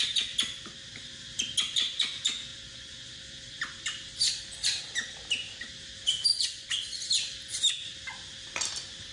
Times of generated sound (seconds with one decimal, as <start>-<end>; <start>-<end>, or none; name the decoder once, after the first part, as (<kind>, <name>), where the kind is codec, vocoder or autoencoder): 2.5-3.6 (vocoder, Vocos); 6.3-7.1